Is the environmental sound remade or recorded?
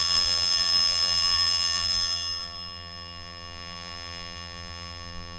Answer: remade